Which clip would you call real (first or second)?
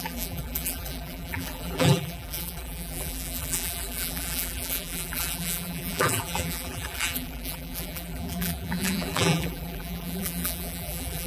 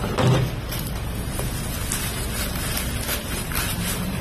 second